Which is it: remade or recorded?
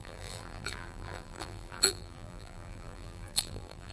remade